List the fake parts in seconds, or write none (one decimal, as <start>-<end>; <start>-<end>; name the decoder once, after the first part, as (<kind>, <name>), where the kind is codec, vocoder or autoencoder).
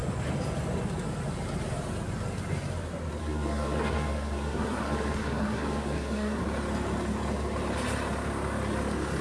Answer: 3.2-6.4 (codec, SNAC)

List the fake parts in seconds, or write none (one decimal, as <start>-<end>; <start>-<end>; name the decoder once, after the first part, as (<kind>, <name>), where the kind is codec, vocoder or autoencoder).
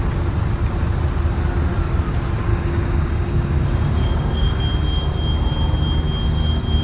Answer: 2.5-4.6 (codec, DAC)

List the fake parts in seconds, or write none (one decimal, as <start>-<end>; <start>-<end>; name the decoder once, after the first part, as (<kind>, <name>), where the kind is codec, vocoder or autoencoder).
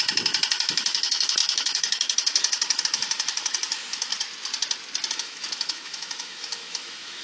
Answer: 0.0-4.1 (autoencoder, DAC-VAE); 5.1-7.2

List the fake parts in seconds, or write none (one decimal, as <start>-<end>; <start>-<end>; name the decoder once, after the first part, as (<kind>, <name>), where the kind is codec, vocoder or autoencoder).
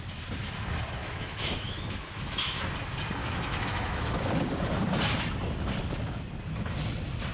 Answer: 1.0-2.6 (autoencoder, DAC-VAE); 3.2-4.1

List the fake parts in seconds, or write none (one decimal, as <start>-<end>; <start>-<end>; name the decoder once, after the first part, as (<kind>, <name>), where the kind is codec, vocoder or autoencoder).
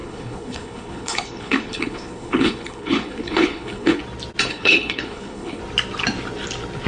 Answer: 0.0-4.0 (codec, HILCodec); 4.5-5.6